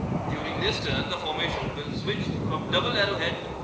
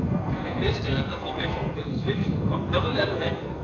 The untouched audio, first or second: first